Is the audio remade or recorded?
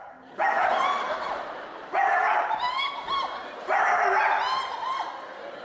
recorded